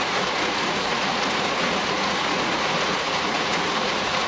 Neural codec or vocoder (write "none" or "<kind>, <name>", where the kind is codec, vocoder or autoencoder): vocoder, Vocos